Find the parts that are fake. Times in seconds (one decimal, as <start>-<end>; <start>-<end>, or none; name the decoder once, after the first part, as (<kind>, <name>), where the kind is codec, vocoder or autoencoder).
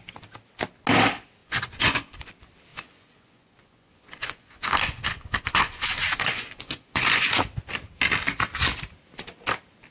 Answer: 1.4-2.3 (vocoder, Vocos); 2.7-7.3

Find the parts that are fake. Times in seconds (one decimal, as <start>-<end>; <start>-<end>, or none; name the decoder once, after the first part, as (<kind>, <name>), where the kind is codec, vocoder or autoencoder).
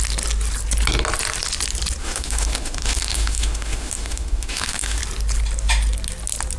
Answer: 2.0-5.0 (autoencoder, DAC-VAE)